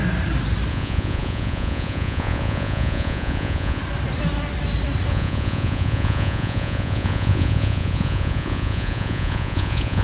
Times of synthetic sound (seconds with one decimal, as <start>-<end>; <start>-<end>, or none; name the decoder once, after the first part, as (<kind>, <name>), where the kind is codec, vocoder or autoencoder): 0.7-3.8 (vocoder, Vocos); 5.1-10.0